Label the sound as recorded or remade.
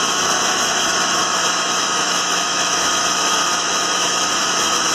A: remade